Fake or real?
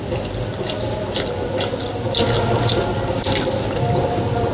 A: real